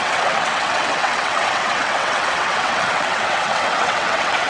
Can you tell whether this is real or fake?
fake